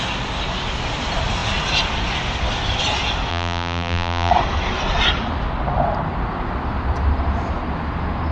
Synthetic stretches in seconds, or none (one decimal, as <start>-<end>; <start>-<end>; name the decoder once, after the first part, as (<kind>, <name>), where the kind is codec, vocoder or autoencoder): 3.3-4.3 (vocoder, BigVGAN v2)